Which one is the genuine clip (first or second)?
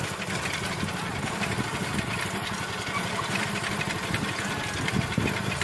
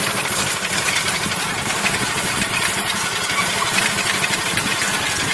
first